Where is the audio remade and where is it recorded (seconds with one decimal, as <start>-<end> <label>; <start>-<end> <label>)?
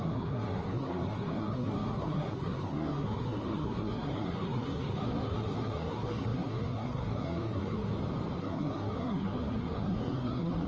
0.0-7.9 remade; 7.9-8.4 recorded; 8.4-10.7 remade